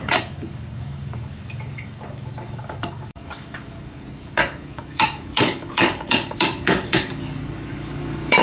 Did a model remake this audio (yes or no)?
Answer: yes